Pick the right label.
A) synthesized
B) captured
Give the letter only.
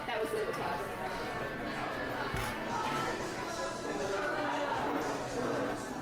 A